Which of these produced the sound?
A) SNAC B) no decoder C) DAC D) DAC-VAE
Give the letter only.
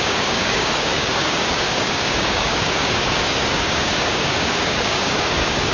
C